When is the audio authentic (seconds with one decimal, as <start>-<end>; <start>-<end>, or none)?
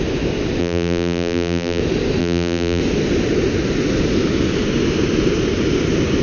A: 0.0-0.6; 1.8-2.2; 2.8-6.2